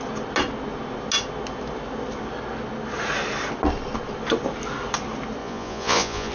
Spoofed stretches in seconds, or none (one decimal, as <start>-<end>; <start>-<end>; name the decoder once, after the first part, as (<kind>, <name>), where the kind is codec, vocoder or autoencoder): 5.4-6.3 (vocoder, Vocos)